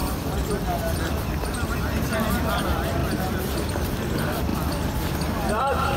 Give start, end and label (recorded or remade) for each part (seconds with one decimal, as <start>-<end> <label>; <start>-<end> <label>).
0.0-3.0 remade; 3.0-3.7 recorded; 3.7-4.5 remade; 4.5-5.6 recorded; 5.6-6.0 remade